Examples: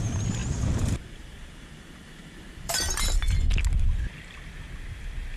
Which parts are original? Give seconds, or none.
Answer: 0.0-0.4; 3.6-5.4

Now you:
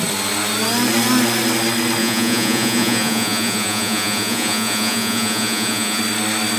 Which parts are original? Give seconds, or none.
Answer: 0.0-2.0; 6.0-6.6

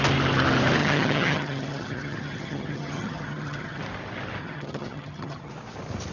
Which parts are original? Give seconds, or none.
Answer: 0.0-0.8; 3.8-4.4; 5.5-6.1

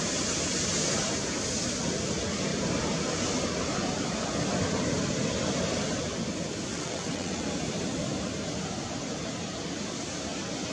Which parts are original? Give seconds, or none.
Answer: 0.0-6.7; 7.4-10.7

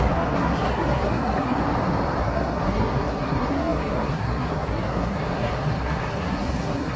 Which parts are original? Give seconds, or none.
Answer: 1.6-2.2